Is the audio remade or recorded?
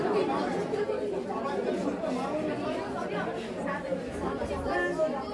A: recorded